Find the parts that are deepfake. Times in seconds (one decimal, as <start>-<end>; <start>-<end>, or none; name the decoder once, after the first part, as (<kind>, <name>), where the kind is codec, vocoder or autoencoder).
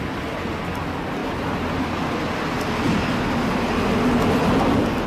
none